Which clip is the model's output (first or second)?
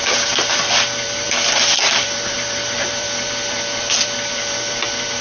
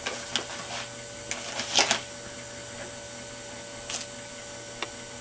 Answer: first